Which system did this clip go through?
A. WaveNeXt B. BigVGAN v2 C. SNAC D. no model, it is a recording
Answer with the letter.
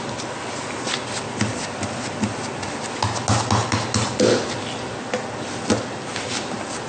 D